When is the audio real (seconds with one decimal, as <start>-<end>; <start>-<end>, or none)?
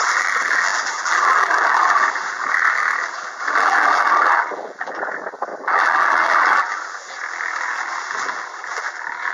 none